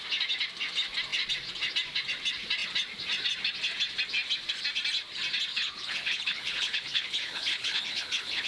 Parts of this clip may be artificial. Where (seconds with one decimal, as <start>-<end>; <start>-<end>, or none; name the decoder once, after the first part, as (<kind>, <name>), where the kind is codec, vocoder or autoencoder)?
5.5-8.5 (codec, HILCodec)